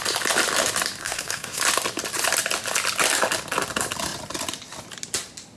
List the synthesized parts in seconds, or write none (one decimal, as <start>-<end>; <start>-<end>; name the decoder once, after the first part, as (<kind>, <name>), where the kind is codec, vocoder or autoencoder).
1.0-1.6 (codec, SNAC)